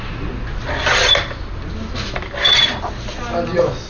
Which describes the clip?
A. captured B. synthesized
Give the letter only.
A